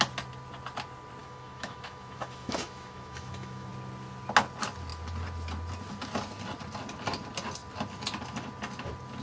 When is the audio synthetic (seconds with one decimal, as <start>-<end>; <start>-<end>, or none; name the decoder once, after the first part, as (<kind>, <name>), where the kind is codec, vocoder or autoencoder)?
1.2-3.7 (autoencoder, DAC-VAE)